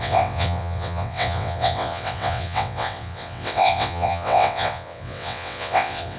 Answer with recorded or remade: remade